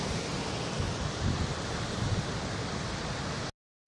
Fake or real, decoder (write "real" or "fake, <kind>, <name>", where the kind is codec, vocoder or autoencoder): real